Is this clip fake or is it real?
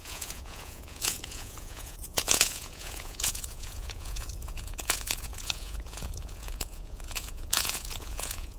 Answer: fake